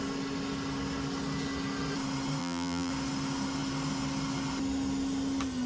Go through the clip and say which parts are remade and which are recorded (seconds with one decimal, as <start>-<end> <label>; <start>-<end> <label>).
0.0-2.4 recorded; 2.4-2.9 remade; 2.9-5.7 recorded